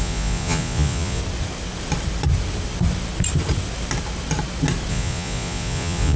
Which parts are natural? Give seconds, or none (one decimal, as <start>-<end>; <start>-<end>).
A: 1.2-4.9